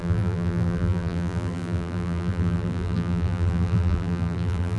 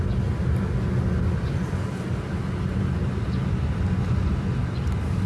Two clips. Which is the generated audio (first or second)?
first